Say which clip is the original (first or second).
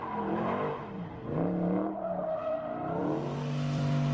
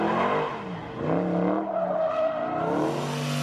second